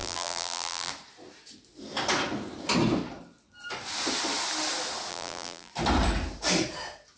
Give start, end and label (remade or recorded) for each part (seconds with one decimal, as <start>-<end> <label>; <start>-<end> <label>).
0.0-0.9 remade; 0.9-5.1 recorded; 5.1-5.7 remade; 5.7-7.2 recorded